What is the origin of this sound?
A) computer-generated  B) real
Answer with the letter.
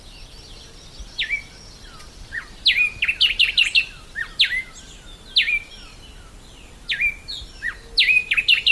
B